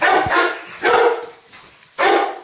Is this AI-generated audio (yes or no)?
no